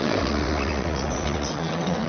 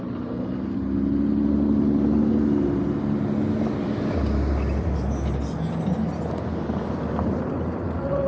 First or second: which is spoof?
first